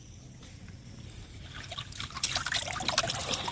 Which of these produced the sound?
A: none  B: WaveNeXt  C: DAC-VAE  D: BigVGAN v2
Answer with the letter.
A